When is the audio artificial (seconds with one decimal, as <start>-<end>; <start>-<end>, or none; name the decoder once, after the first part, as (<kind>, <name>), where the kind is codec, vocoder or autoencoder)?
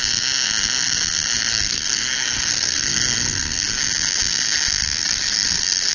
1.5-3.8 (codec, SNAC); 5.0-5.9